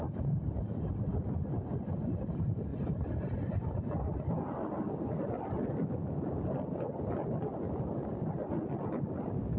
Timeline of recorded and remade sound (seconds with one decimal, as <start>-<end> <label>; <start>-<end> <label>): 0.0-9.6 recorded